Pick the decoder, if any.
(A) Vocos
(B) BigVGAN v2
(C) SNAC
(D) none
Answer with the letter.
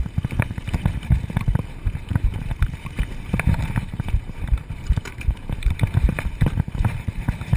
B